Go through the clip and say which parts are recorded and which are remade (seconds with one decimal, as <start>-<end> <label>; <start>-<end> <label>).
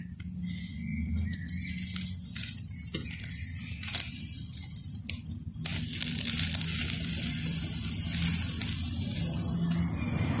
0.0-10.4 recorded